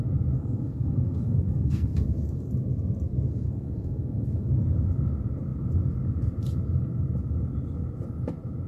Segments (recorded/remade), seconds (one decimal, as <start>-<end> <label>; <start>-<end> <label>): 0.0-0.4 recorded; 0.4-2.5 remade; 2.5-3.3 recorded; 3.3-4.5 remade; 4.5-8.7 recorded